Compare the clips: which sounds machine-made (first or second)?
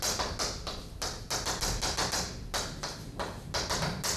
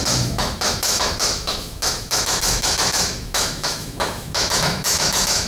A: second